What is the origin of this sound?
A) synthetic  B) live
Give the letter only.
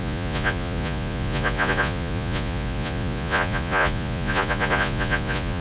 A